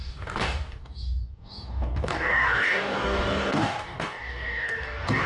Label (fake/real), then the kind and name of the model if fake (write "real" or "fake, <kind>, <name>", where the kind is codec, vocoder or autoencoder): fake, codec, DAC